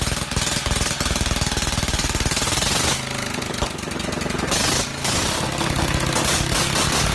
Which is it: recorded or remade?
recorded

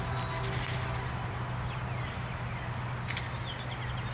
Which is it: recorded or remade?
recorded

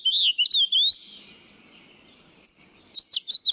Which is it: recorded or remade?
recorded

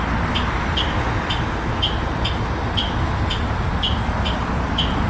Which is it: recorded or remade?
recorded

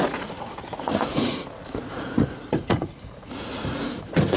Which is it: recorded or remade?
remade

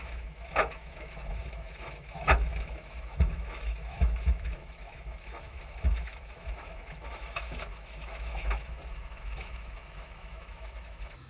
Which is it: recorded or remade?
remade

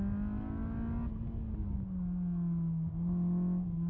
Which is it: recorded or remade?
recorded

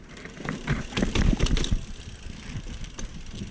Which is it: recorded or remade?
recorded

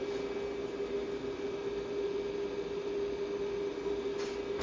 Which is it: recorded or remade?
recorded